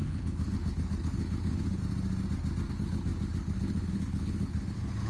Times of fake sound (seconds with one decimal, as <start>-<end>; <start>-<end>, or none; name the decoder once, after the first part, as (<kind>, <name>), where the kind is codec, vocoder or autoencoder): 0.0-1.8 (codec, HILCodec); 2.7-5.1